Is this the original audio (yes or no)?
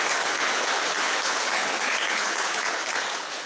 no